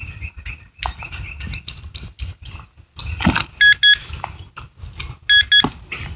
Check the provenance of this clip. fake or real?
real